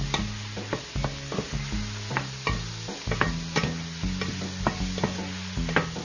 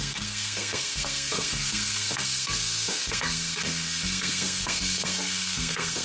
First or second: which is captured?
first